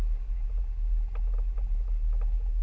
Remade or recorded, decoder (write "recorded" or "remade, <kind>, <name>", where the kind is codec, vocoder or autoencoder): recorded